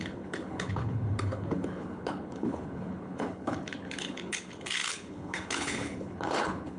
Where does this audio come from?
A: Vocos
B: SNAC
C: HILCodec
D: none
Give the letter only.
C